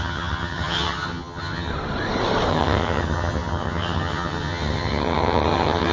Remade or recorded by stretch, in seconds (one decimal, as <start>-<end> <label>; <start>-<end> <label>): 0.0-1.7 remade; 1.7-2.5 recorded; 2.5-5.9 remade